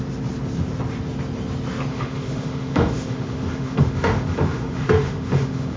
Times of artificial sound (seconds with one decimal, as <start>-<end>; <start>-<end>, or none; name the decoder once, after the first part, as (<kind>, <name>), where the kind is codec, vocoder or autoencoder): 1.9-5.8 (autoencoder, DAC-VAE)